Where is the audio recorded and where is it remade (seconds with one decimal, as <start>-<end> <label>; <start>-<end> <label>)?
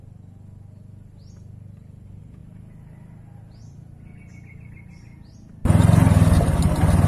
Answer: 0.0-7.1 recorded